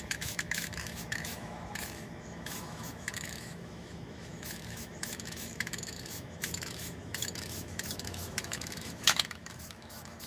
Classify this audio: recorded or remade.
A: remade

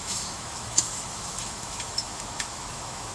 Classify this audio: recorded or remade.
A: remade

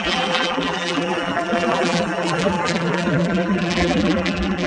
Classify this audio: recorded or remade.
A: remade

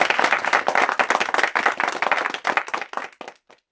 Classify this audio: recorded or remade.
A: recorded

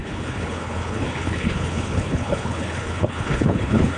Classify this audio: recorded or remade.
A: remade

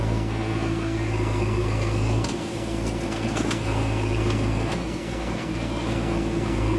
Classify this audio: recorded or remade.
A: remade